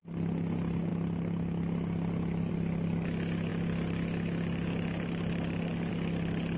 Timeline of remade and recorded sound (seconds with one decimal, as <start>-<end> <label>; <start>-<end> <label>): 0.0-6.6 recorded